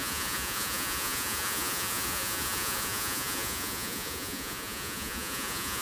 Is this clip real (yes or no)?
no